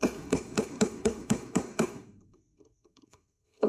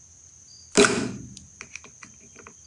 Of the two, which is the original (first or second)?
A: second